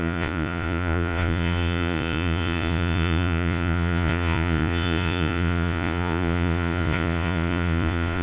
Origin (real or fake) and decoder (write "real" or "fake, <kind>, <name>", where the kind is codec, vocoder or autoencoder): fake, vocoder, Vocos